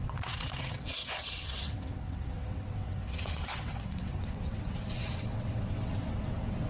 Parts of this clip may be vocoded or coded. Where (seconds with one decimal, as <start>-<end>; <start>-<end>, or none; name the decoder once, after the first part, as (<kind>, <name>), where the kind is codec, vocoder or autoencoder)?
0.0-6.7 (vocoder, WaveNeXt)